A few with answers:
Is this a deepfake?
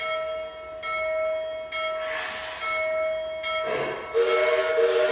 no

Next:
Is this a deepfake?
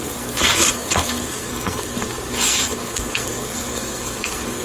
yes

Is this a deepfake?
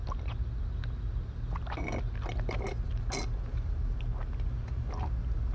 no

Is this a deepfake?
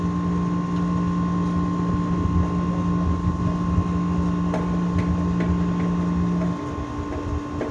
no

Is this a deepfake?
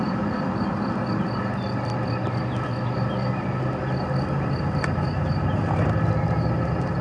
no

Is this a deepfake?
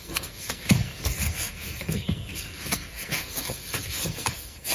yes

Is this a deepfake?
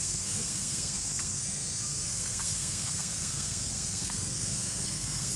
yes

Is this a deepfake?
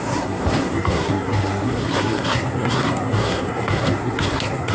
yes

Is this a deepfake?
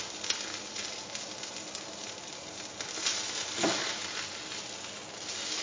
no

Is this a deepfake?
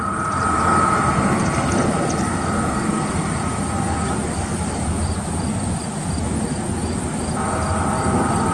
no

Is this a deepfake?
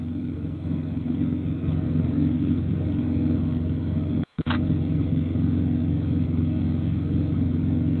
yes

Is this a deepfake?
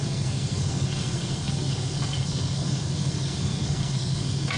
yes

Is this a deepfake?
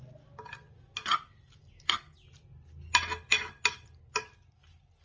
no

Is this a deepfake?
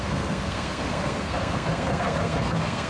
yes